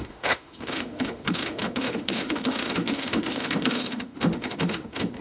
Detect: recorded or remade remade